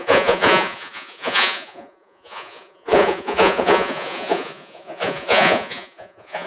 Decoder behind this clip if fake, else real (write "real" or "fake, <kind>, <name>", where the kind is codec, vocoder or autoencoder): fake, vocoder, Vocos